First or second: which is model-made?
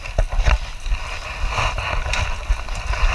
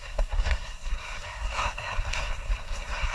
second